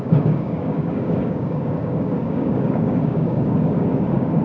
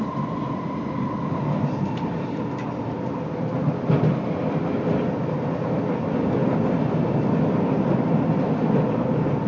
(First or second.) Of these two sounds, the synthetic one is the first